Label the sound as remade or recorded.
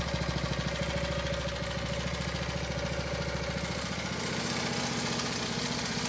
recorded